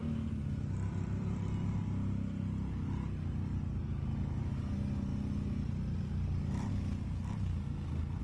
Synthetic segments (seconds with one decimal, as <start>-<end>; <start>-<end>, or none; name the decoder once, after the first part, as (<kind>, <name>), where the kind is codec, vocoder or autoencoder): none